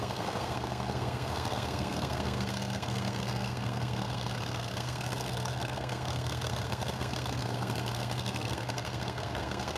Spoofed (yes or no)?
yes